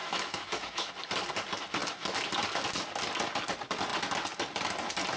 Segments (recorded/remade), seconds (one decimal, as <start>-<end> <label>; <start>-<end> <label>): 0.0-0.9 remade; 0.9-5.2 recorded